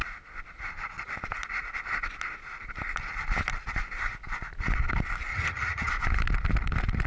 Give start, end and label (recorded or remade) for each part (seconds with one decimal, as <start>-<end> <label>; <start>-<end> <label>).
0.0-5.3 recorded; 5.3-5.9 remade; 5.9-7.1 recorded